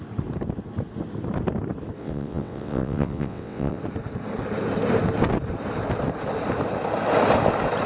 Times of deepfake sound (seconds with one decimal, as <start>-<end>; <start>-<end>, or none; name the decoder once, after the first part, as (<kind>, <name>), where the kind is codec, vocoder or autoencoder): 2.0-3.8 (vocoder, WaveNeXt)